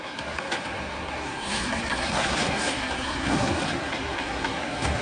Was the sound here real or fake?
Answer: fake